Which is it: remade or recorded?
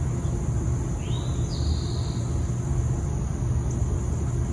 recorded